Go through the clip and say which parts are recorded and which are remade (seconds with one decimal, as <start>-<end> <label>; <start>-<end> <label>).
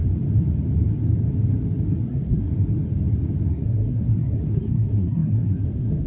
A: 0.0-2.0 recorded; 2.0-2.5 remade; 2.5-3.5 recorded; 3.5-6.1 remade